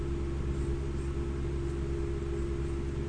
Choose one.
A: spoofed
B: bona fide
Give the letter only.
A